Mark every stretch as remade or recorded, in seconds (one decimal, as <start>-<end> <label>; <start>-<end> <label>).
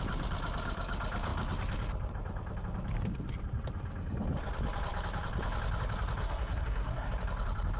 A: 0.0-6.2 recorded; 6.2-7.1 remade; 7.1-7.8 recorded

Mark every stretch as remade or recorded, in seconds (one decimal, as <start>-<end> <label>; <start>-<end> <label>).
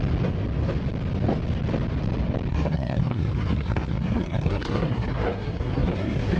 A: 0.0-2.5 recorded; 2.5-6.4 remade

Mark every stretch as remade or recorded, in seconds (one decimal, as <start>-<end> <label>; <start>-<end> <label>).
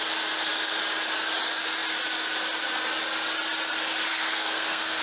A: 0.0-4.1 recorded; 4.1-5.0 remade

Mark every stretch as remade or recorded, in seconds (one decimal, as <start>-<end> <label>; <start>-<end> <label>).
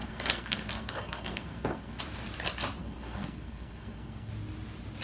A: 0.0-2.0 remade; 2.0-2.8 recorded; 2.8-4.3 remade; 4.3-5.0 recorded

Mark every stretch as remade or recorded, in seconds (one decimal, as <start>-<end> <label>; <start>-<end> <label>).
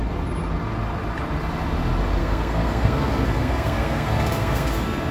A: 0.0-2.2 recorded; 2.2-5.1 remade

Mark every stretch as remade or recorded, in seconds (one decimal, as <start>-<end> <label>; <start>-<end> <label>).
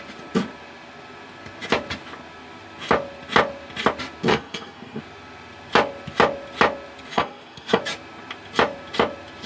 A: 0.0-4.3 recorded; 4.3-5.0 remade; 5.0-7.1 recorded; 7.1-7.8 remade; 7.8-9.5 recorded